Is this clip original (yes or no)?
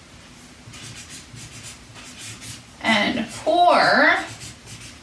yes